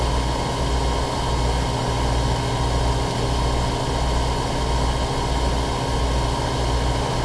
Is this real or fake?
real